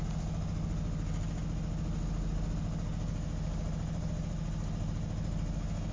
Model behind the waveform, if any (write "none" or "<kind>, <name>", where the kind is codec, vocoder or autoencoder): none